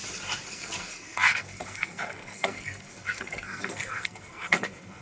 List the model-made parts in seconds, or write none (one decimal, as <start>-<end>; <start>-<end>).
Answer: 0.5-5.0